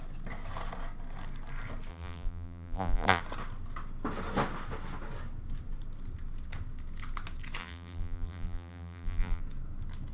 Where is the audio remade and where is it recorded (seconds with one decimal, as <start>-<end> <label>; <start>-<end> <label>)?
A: 0.0-1.9 recorded; 1.9-3.2 remade; 3.2-7.6 recorded; 7.6-9.4 remade; 9.4-10.1 recorded